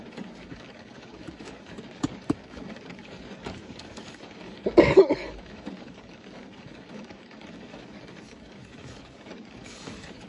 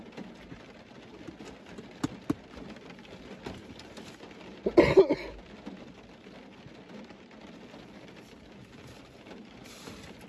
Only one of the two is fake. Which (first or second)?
first